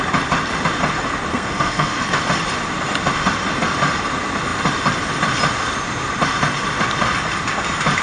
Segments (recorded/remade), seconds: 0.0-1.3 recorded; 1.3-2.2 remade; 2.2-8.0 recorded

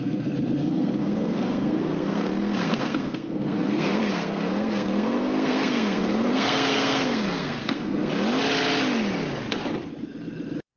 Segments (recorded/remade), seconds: 0.0-8.1 remade; 8.1-10.8 recorded

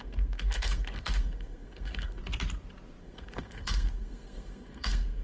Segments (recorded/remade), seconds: 0.0-2.2 remade; 2.2-3.0 recorded; 3.0-5.2 remade

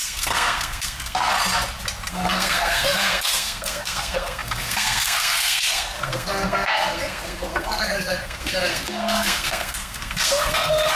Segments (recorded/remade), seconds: 0.0-1.3 remade; 1.3-2.1 recorded; 2.1-11.0 remade